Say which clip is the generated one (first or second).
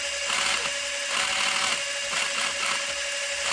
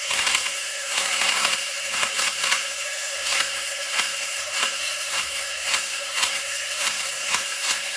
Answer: second